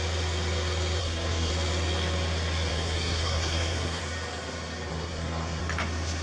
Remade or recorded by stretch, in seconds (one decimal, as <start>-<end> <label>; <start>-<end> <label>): 0.0-1.0 recorded; 1.0-1.5 remade; 1.5-2.7 recorded; 2.7-4.0 remade; 4.0-4.9 recorded; 4.9-5.6 remade; 5.6-6.2 recorded